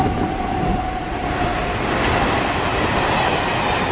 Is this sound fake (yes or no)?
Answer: no